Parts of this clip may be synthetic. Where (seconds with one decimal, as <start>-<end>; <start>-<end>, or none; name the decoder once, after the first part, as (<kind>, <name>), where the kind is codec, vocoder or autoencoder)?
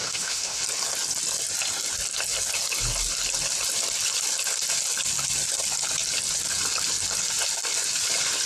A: 0.0-0.6 (autoencoder, DAC-VAE)